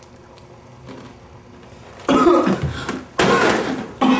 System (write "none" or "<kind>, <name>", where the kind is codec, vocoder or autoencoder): none